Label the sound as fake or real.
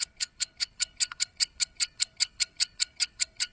fake